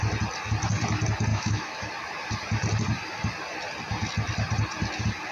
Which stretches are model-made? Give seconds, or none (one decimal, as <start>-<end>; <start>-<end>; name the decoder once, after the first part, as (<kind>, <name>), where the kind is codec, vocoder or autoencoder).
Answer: 1.3-1.9 (autoencoder, DAC-VAE)